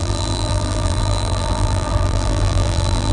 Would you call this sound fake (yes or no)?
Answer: yes